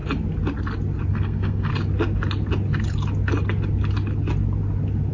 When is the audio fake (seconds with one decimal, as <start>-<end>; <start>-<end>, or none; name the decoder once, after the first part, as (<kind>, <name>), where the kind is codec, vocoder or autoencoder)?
1.1-1.7 (codec, SNAC)